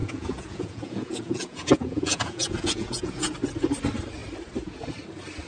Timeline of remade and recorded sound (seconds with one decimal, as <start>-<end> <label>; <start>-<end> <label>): 0.0-3.3 remade; 3.3-5.5 recorded